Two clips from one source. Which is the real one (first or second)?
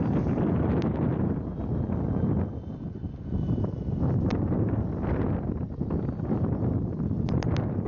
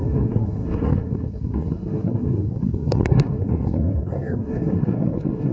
first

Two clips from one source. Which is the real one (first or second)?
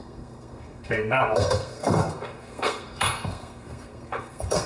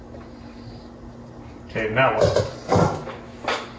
second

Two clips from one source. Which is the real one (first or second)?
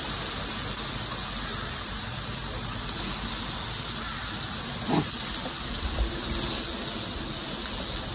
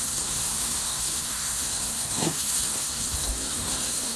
first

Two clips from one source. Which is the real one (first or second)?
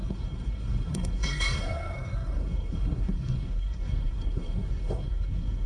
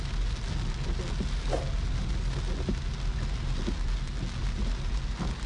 second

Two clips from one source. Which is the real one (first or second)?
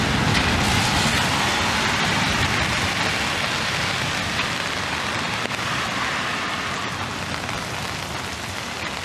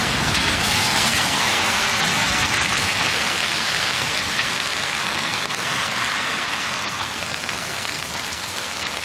first